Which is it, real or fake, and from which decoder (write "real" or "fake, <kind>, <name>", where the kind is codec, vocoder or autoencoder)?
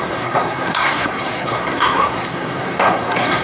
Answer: fake, codec, SNAC